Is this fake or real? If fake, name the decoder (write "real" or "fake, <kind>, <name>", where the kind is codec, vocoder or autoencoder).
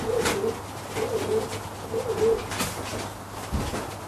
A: real